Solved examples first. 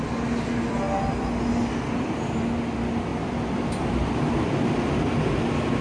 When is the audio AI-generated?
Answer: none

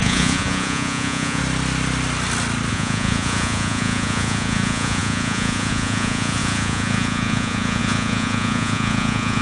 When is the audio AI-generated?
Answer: 0.0-1.4 (vocoder, Vocos); 2.7-9.4

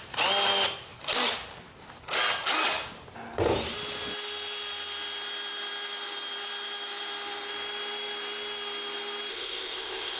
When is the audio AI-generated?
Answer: 9.3-10.2 (codec, ZipCodec)